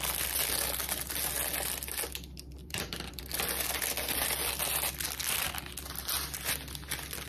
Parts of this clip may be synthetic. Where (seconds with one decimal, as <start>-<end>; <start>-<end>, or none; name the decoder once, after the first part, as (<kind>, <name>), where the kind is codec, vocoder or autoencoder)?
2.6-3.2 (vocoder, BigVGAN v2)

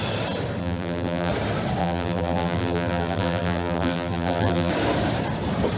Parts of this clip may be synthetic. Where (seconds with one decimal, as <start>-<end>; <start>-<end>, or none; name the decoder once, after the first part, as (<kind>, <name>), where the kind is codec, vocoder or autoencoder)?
0.6-1.3 (vocoder, BigVGAN v2); 1.8-4.7

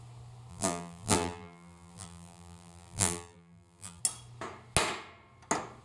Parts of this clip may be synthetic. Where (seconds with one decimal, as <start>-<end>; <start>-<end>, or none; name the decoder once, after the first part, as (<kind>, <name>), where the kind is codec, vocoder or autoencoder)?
0.5-4.0 (vocoder, BigVGAN v2)